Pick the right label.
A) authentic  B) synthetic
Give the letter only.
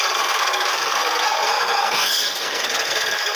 B